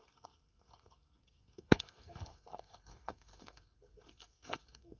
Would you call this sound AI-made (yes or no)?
yes